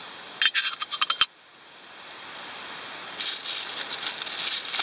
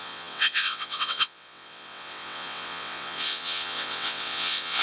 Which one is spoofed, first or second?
second